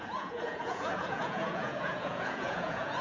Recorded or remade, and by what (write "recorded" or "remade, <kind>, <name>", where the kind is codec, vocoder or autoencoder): remade, vocoder, Vocos